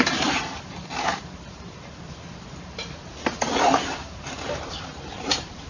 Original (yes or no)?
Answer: no